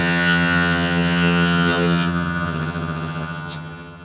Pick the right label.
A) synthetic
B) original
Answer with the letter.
A